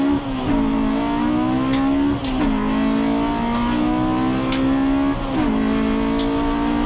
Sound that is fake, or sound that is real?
real